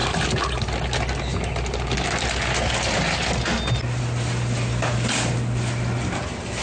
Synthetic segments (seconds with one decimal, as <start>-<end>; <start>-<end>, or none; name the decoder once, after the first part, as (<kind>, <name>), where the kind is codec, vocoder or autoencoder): none